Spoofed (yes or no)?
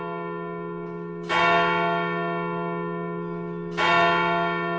no